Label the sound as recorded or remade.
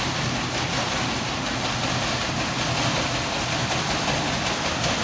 recorded